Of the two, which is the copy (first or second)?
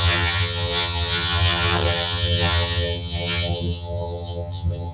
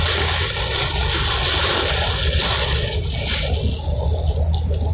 first